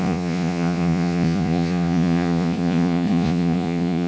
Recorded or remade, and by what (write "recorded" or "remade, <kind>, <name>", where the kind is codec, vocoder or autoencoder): remade, vocoder, Vocos